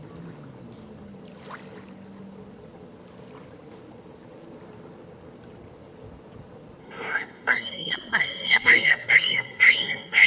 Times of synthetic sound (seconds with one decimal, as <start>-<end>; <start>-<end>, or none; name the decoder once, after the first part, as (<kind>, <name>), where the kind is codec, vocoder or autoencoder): 6.8-10.3 (codec, SNAC)